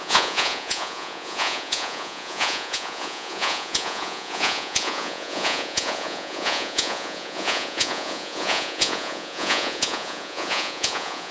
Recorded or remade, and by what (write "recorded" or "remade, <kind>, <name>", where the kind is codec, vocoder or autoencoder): remade, vocoder, Vocos